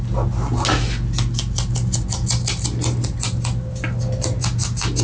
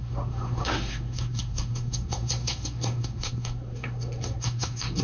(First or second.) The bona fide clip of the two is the first